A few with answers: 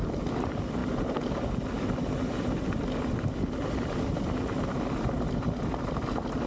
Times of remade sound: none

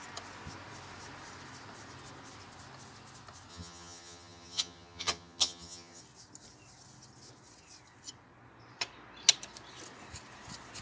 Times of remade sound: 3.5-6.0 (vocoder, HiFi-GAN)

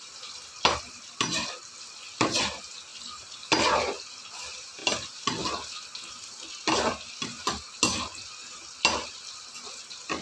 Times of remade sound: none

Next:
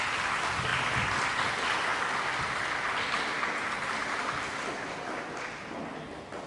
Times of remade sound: none

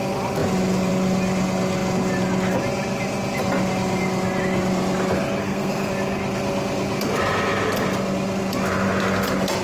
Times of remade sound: 5.4-5.9 (codec, SNAC)

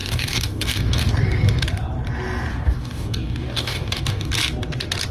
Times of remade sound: 0.0-1.1 (codec, DAC); 2.5-4.3

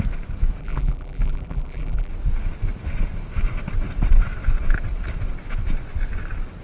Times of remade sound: 0.6-2.1 (vocoder, BigVGAN v2)